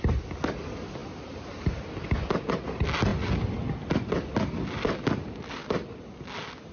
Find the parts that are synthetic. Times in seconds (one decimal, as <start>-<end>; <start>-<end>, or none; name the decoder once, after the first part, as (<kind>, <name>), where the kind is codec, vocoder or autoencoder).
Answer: none